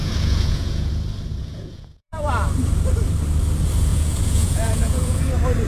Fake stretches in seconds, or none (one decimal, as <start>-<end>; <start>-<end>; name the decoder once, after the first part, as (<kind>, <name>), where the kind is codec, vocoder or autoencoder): 0.0-0.9 (vocoder, Vocos); 1.4-2.3; 3.9-5.2